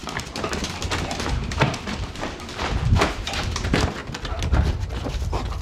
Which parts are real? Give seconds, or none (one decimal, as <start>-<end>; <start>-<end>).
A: 3.4-5.6